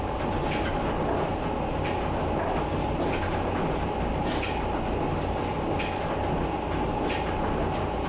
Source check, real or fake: real